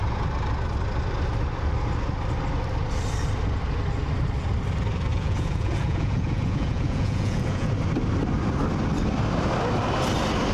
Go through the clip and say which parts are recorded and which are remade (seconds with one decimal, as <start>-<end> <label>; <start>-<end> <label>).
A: 0.0-5.1 recorded; 5.1-7.7 remade; 7.7-10.5 recorded